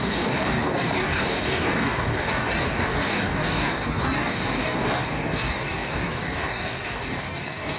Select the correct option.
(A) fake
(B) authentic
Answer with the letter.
A